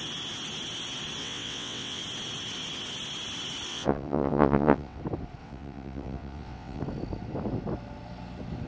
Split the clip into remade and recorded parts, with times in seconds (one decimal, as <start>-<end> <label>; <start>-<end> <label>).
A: 0.0-1.2 recorded; 1.2-2.0 remade; 2.0-3.7 recorded; 3.7-5.0 remade; 5.0-5.4 recorded; 5.4-6.8 remade; 6.8-8.7 recorded

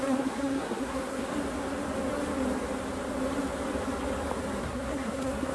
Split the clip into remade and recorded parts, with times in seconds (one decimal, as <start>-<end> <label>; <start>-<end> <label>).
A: 0.0-1.3 remade; 1.3-4.6 recorded; 4.6-5.5 remade

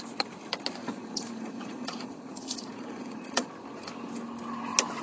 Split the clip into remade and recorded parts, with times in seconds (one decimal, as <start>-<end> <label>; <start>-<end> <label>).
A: 0.0-0.8 recorded; 0.8-3.5 remade; 3.5-5.0 recorded

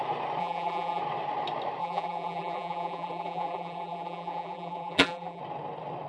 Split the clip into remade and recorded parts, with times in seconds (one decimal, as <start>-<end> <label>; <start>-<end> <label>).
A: 0.0-0.4 recorded; 0.4-1.0 remade; 1.0-1.8 recorded; 1.8-5.4 remade; 5.4-6.1 recorded

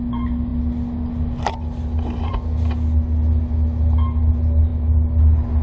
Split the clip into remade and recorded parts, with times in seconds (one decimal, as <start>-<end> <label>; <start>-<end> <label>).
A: 0.0-5.6 recorded

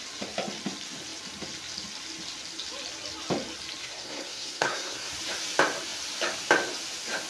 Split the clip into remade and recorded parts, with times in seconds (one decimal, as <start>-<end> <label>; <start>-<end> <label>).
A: 0.0-3.8 recorded; 3.8-5.1 remade; 5.1-7.3 recorded

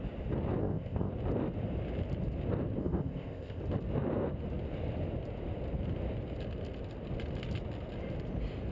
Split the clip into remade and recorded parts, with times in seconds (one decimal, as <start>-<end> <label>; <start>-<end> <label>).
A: 0.0-0.6 recorded; 0.6-1.1 remade; 1.1-2.8 recorded; 2.8-3.6 remade; 3.6-8.7 recorded

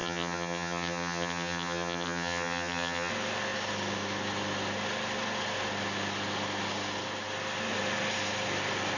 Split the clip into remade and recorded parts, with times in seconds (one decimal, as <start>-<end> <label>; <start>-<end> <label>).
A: 0.0-3.1 remade; 3.1-9.0 recorded